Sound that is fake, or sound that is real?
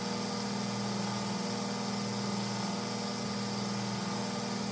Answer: real